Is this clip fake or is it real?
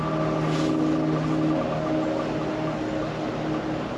real